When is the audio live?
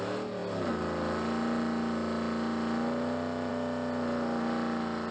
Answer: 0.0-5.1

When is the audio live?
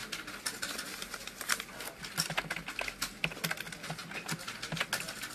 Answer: 0.0-5.3